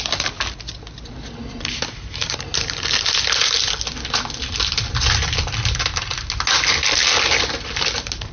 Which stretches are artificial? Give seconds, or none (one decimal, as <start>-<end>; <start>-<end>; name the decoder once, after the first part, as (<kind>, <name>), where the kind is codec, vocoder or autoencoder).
none

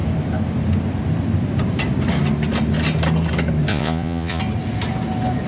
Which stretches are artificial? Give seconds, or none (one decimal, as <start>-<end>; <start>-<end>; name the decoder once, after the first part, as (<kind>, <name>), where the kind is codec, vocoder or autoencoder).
3.7-4.4 (vocoder, Vocos)

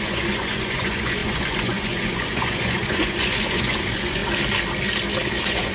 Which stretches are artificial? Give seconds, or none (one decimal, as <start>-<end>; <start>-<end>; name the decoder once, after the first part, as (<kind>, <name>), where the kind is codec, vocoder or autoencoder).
0.0-4.2 (vocoder, Vocos); 5.3-5.7

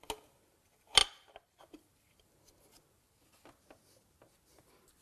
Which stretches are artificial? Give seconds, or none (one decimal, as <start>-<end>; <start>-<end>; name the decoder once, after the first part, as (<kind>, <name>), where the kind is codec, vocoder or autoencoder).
none

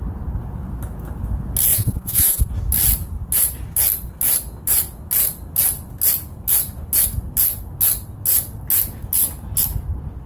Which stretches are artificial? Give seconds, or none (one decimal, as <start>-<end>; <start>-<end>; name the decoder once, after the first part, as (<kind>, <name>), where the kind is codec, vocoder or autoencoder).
1.7-2.5 (vocoder, Vocos)

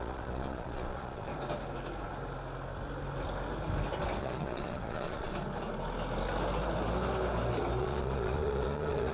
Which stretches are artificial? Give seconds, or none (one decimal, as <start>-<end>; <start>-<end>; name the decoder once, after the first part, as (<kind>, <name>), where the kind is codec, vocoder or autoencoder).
0.0-1.3 (vocoder, Vocos); 4.2-5.3; 7.8-9.1